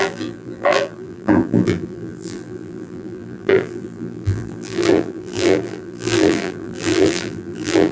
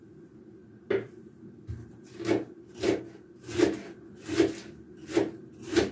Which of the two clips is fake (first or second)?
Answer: first